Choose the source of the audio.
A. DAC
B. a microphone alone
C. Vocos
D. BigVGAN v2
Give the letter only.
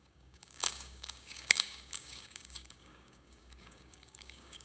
A